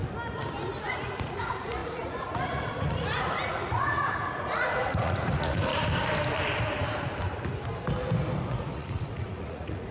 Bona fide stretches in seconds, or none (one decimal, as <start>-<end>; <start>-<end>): 0.0-0.8; 5.7-8.5